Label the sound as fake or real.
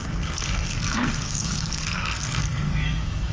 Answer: fake